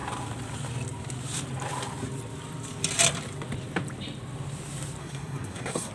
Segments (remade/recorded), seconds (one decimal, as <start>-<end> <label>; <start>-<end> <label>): 0.0-5.0 recorded; 5.0-5.9 remade